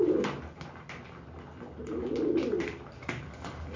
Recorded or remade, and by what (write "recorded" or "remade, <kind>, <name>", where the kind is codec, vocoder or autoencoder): recorded